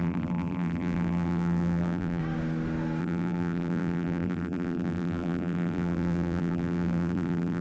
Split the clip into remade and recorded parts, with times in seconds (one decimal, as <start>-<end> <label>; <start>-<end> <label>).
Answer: 0.0-2.2 remade; 2.2-3.0 recorded; 3.0-7.6 remade